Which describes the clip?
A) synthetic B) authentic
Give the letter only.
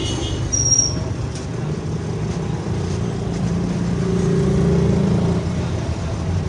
B